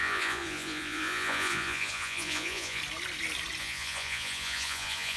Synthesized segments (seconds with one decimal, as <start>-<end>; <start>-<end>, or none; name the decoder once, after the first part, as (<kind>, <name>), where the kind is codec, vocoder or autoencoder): 0.0-2.8 (vocoder, Vocos); 3.6-5.2